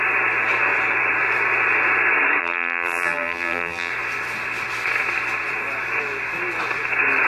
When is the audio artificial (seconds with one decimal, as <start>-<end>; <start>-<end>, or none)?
2.4-3.9